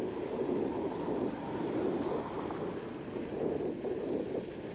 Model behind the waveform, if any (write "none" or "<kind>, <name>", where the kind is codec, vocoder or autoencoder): none